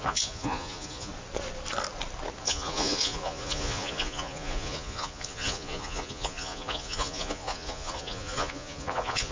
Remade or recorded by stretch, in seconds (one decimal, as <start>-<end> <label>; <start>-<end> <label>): 0.0-1.1 remade; 1.1-2.4 recorded; 2.4-9.3 remade